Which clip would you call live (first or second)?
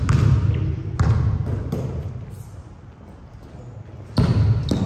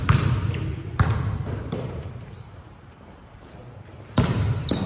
first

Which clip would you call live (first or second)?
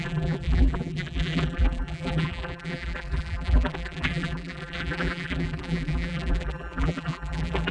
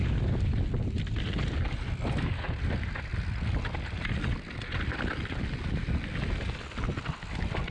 second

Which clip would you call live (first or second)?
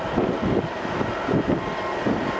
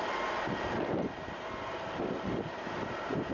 first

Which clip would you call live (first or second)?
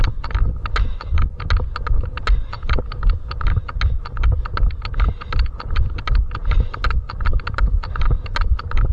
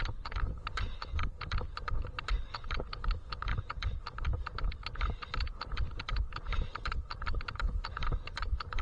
first